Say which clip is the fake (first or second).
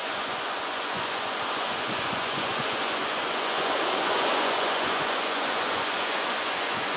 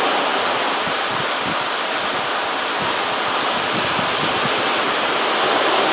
first